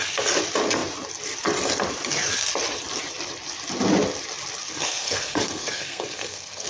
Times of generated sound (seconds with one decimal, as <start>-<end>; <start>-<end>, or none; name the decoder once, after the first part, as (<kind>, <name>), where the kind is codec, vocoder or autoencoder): 4.6-6.7 (codec, SNAC)